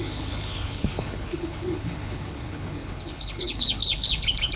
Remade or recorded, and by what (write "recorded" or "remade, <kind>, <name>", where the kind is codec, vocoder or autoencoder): remade, codec, HILCodec